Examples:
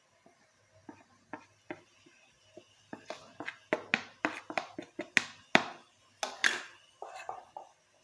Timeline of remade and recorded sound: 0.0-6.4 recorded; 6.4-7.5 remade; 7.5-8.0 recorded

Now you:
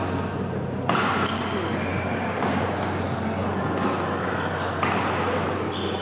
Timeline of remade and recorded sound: 0.0-1.9 recorded; 1.9-3.0 remade; 3.0-6.0 recorded